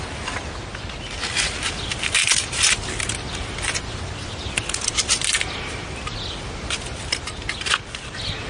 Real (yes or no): yes